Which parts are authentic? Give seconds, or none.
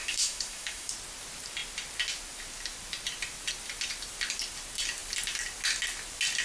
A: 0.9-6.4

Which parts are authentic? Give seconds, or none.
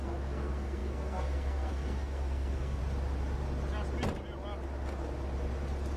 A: 2.8-6.0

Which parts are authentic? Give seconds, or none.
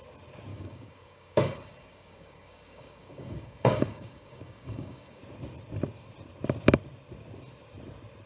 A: 0.0-0.5; 5.2-8.3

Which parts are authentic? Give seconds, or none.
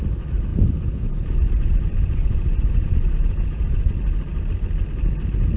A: 0.0-0.5; 3.9-5.6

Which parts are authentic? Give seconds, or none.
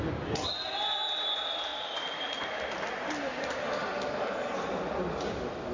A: 0.0-5.7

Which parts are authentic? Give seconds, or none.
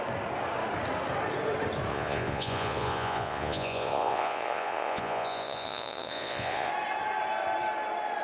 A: 0.0-1.9; 6.7-8.2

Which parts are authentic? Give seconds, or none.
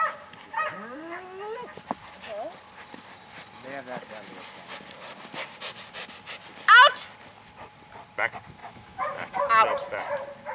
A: 0.0-8.6; 9.5-10.5